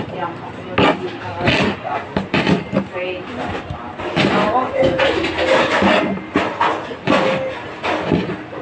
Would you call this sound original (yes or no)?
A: yes